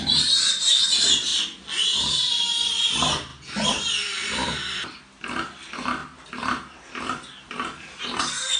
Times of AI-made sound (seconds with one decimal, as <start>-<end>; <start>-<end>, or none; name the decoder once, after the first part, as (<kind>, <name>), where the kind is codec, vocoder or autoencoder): none